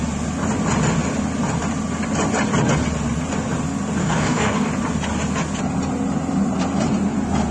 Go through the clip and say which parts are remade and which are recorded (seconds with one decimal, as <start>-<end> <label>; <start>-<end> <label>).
0.0-4.0 recorded; 4.0-4.7 remade; 4.7-7.5 recorded